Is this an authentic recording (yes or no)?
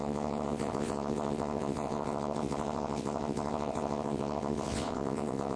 no